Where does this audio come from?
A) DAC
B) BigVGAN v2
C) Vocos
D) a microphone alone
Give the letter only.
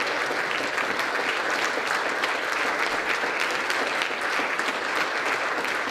D